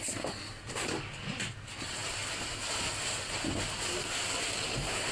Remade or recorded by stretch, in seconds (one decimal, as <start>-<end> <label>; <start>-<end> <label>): 0.0-5.1 recorded

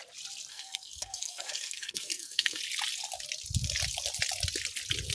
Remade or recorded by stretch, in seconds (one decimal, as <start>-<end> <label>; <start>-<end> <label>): 0.0-0.5 recorded; 0.5-2.6 remade; 2.6-5.1 recorded

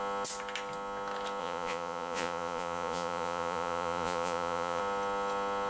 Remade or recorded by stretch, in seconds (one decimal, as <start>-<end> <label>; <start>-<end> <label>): 0.0-1.4 recorded; 1.4-4.8 remade; 4.8-5.7 recorded

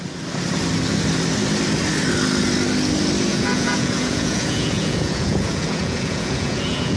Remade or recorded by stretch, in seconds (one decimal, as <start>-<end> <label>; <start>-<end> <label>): 0.0-3.3 recorded; 3.3-7.0 remade

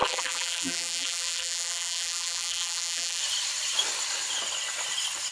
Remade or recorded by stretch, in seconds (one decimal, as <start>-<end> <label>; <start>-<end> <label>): 0.0-3.2 remade; 3.2-5.3 recorded

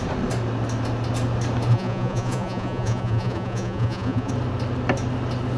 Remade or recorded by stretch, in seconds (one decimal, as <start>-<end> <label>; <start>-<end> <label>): 0.0-1.7 recorded; 1.7-4.3 remade; 4.3-5.6 recorded